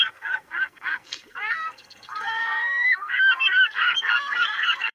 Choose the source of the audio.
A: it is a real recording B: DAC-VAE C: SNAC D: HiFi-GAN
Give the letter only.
C